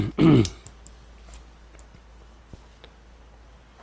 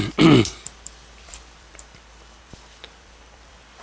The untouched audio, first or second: first